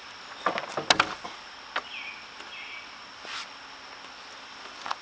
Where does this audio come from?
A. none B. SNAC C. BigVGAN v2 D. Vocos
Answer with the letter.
A